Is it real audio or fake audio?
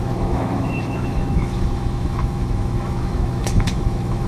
fake